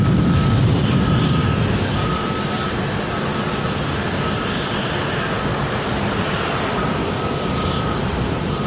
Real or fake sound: real